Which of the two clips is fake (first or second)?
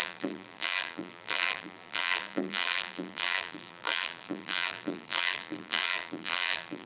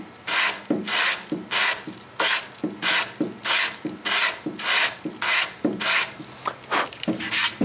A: first